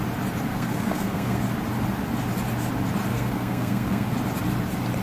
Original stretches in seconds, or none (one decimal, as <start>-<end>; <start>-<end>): 0.0-0.5; 1.4-3.1; 4.1-5.0